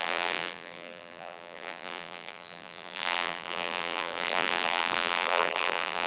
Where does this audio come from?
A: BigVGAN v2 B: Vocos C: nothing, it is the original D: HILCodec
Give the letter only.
A